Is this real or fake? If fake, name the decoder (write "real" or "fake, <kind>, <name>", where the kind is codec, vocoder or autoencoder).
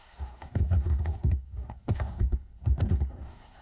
fake, codec, SNAC